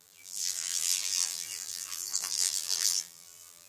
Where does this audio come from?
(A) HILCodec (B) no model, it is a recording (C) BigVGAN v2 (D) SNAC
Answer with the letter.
C